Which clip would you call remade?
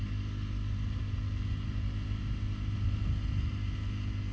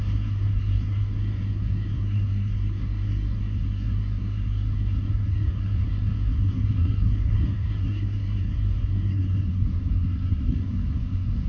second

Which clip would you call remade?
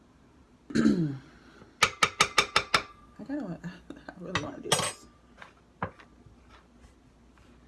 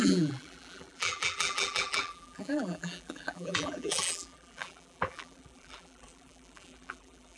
second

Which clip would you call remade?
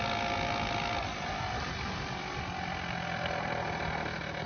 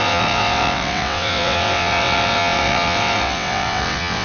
second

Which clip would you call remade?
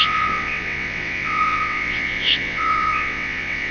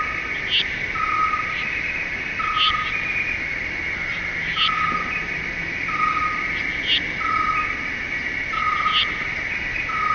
first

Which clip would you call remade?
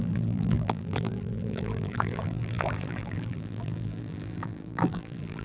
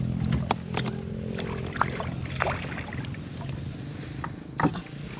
first